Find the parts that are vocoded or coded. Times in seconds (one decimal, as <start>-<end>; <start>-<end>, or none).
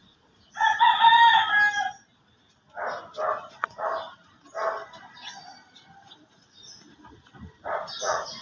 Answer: 0.0-0.9; 3.4-3.9; 7.8-8.4